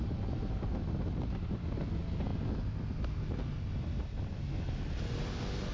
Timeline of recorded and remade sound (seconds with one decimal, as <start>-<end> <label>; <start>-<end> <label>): 0.0-5.7 recorded